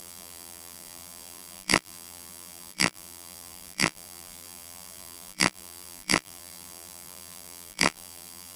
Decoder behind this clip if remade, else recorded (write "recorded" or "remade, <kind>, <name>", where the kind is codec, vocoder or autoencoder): remade, vocoder, BigVGAN v2